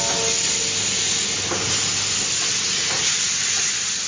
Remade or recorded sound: recorded